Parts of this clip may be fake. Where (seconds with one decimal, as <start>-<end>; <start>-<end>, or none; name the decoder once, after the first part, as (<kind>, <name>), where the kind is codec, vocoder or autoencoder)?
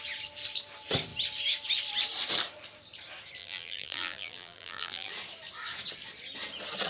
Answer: 3.4-5.1 (vocoder, BigVGAN v2)